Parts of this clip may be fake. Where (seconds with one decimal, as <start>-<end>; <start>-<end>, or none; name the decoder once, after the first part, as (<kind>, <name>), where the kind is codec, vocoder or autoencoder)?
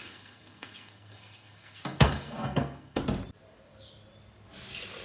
0.0-3.0 (codec, SNAC)